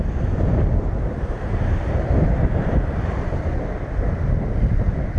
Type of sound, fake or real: real